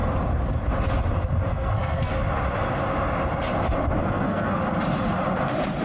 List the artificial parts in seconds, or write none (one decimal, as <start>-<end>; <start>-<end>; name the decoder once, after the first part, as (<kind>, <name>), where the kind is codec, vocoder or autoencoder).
1.5-2.1 (codec, SNAC); 4.0-4.6